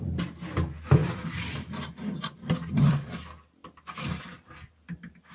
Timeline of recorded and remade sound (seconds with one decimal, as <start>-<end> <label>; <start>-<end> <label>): 0.0-1.0 recorded; 1.0-4.2 remade; 4.2-5.3 recorded